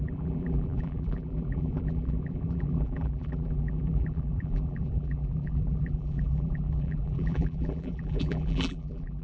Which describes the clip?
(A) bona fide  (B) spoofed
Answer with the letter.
B